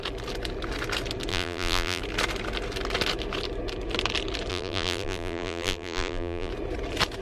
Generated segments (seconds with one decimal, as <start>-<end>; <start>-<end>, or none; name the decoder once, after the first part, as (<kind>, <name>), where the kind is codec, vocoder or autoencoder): 1.3-2.0 (vocoder, BigVGAN v2); 4.5-6.5